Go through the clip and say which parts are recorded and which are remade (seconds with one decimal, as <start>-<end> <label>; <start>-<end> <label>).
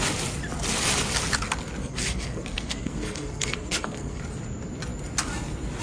0.0-1.8 recorded; 1.8-4.2 remade; 4.2-5.8 recorded